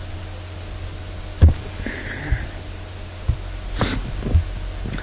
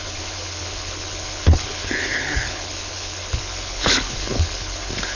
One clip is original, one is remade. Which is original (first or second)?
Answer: first